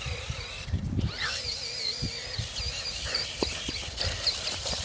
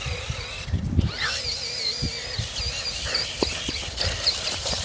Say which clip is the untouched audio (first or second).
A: second